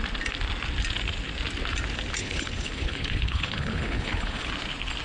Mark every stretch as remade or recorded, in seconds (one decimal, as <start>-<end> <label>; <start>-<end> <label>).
0.0-2.2 recorded; 2.2-4.5 remade; 4.5-5.0 recorded

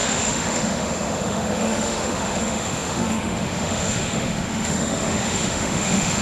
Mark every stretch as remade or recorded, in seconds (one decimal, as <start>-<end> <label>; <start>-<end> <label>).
0.0-6.2 remade